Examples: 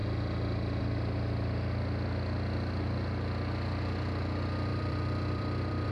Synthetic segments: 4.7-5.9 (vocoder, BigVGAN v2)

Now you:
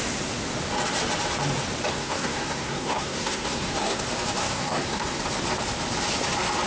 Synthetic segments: 1.9-4.0 (codec, SNAC); 4.4-5.2

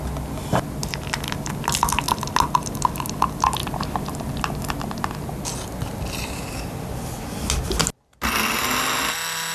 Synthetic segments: none

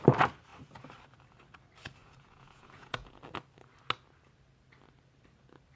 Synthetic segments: 2.0-3.2 (vocoder, Vocos)

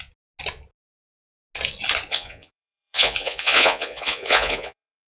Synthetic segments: 2.1-5.1 (vocoder, Vocos)

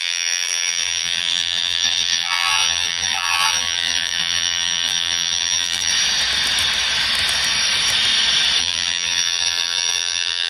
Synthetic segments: 0.0-5.9 (vocoder, BigVGAN v2); 8.6-10.5

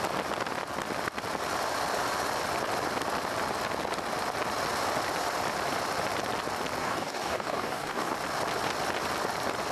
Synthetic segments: 6.8-8.1 (codec, DAC)

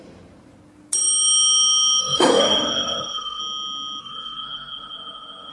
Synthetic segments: 2.0-3.4 (codec, SNAC); 4.0-5.5